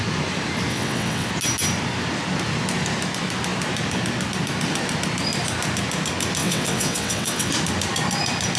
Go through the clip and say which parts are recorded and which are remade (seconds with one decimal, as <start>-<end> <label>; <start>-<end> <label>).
0.0-0.7 recorded; 0.7-1.3 remade; 1.3-6.4 recorded; 6.4-7.5 remade; 7.5-8.6 recorded